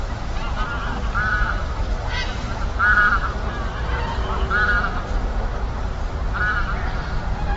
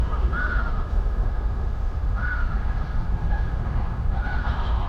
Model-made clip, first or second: second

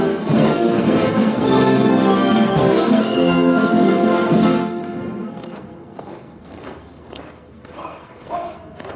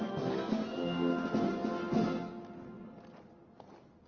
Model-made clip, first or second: first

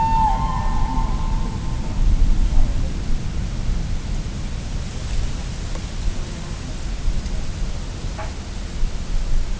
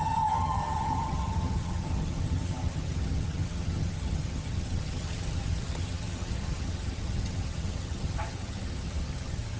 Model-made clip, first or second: second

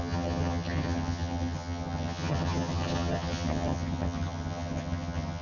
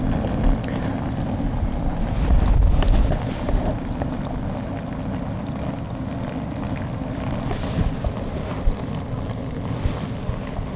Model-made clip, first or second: first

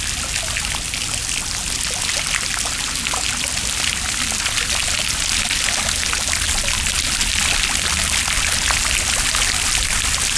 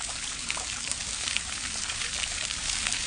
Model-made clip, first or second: second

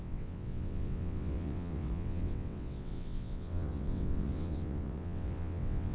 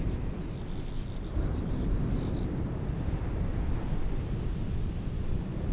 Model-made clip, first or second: first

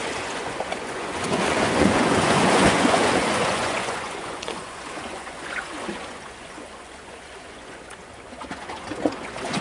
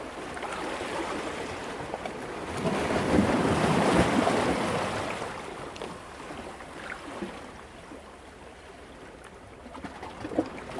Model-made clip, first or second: first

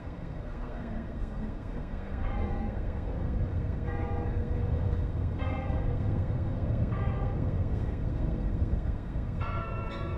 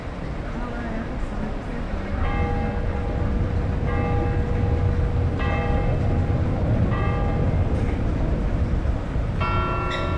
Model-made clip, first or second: first